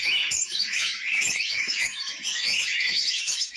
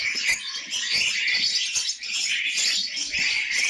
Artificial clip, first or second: first